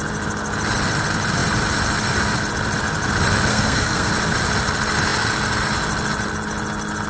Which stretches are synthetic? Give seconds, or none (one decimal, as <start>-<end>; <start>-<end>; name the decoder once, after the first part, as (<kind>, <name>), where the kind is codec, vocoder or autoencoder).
3.5-4.1 (codec, SNAC)